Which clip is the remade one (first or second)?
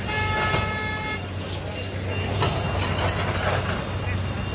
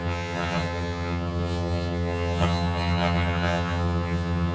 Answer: second